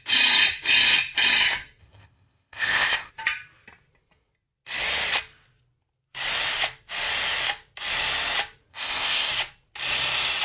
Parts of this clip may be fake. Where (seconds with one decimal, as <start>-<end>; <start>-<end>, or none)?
1.8-3.1; 8.7-9.3